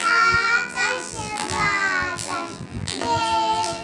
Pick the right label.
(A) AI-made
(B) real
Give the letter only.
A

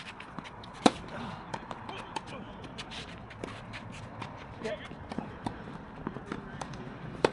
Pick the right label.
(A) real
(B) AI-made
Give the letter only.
B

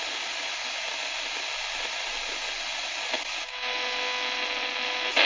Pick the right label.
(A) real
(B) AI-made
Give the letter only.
A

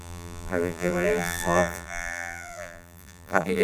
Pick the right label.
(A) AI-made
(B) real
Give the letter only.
A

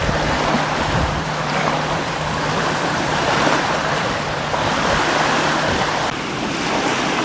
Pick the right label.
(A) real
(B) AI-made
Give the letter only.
B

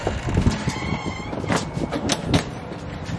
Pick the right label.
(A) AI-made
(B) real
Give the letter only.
B